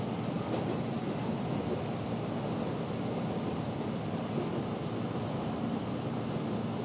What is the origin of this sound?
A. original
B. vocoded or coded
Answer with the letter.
A